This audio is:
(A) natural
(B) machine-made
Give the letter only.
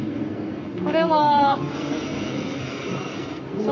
B